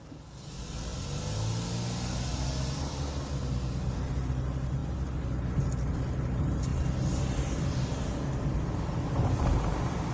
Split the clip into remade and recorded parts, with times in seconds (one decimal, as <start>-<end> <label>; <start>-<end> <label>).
0.0-10.1 recorded